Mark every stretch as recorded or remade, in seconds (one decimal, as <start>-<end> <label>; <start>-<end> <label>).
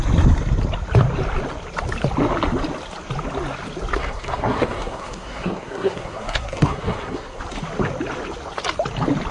0.0-4.0 recorded; 4.0-7.4 remade; 7.4-9.3 recorded